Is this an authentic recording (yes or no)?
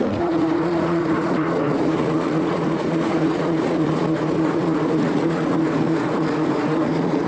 no